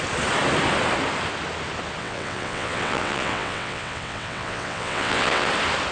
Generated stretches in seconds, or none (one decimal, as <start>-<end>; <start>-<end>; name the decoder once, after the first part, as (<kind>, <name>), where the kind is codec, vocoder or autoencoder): 2.0-5.5 (vocoder, WaveNeXt)